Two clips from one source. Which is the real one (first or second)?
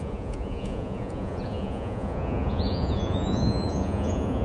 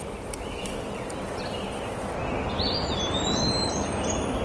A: second